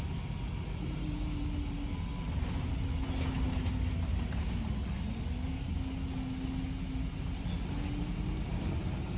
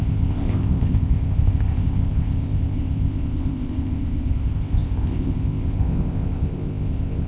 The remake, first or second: second